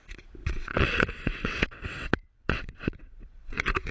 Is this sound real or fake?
fake